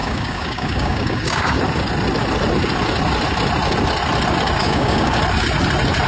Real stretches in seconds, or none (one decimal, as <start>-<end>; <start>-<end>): 1.6-4.6; 5.2-6.1